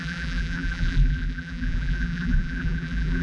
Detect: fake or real fake